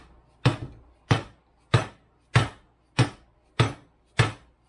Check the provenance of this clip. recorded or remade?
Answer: recorded